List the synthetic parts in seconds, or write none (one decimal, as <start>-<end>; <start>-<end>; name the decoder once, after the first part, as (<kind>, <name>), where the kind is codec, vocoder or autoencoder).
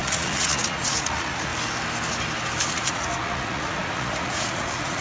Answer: 0.0-1.5 (vocoder, Vocos); 2.7-5.0